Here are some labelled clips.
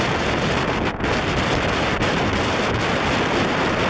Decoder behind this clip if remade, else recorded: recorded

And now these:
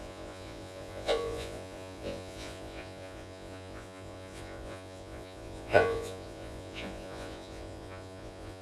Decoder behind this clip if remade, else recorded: remade, vocoder, Vocos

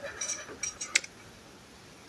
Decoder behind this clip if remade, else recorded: recorded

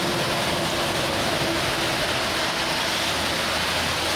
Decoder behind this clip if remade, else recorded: recorded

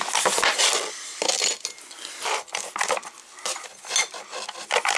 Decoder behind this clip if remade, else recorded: recorded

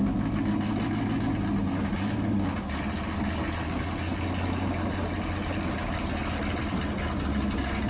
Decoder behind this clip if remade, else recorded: recorded